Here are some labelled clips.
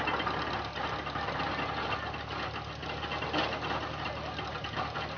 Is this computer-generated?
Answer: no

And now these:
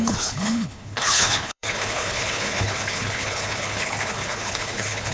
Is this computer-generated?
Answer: yes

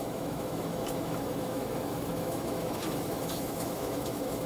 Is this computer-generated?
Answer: yes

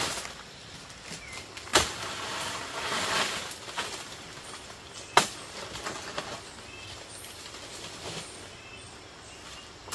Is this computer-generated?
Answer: no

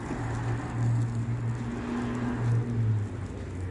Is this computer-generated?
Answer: no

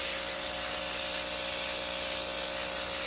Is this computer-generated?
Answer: no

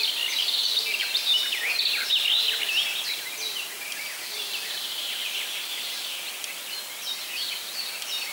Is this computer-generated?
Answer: no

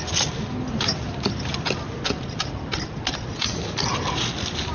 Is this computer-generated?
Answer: no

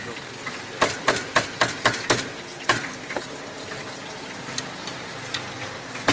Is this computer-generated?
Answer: no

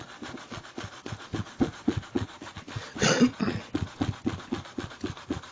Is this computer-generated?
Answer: yes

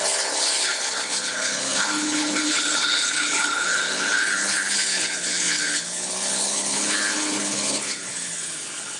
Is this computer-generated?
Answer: yes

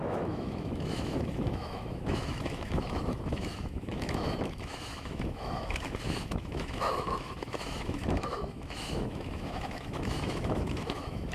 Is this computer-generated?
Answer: yes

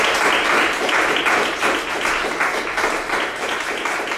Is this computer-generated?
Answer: no